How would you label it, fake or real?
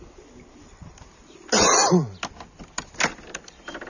real